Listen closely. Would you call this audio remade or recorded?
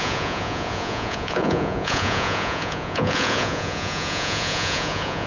remade